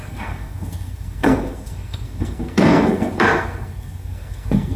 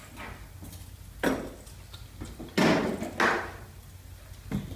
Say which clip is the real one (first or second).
second